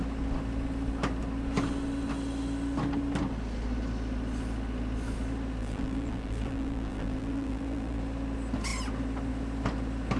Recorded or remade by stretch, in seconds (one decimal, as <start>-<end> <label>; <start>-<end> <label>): 0.0-5.6 recorded; 5.6-8.0 remade; 8.0-10.2 recorded